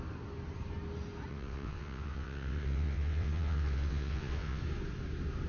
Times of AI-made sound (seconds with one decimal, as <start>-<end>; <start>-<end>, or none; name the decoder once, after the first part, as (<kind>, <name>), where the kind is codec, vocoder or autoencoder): 1.3-4.6 (vocoder, WaveNeXt)